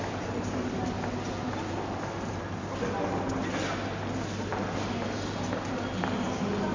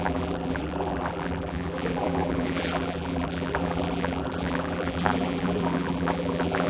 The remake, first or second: second